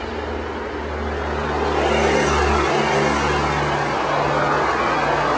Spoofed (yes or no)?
no